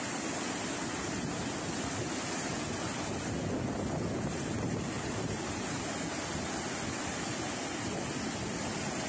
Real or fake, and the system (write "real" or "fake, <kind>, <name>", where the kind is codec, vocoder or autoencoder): real